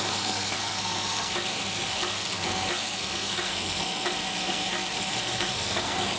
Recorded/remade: remade